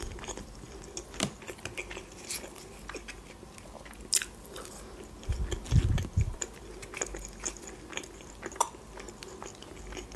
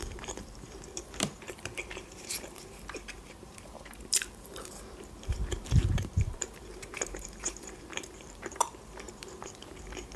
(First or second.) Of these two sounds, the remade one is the second